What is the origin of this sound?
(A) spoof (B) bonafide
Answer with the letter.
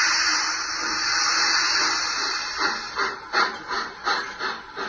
B